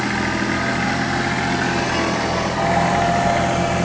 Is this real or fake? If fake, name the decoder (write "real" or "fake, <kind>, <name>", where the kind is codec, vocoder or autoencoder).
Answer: real